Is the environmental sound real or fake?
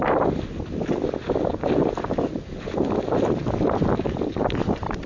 fake